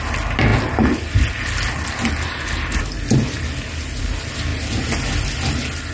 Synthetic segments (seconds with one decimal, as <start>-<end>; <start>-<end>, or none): none